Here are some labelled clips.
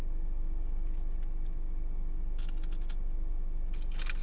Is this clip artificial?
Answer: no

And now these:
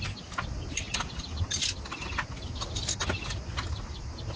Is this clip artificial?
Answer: no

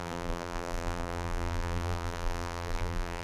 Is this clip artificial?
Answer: yes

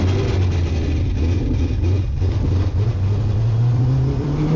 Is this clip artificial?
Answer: no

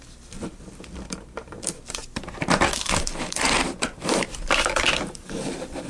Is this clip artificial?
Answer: yes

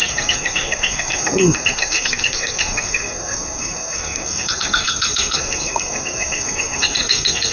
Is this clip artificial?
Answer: yes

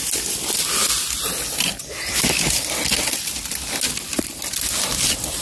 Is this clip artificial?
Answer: no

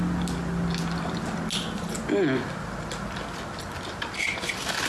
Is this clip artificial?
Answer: no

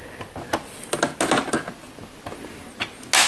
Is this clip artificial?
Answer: no